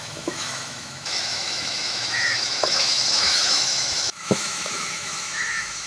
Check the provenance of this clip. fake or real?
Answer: fake